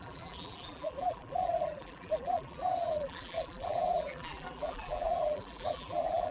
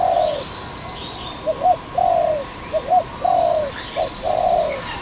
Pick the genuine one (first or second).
second